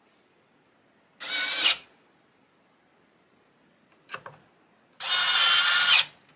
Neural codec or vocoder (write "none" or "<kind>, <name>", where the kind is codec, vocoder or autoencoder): none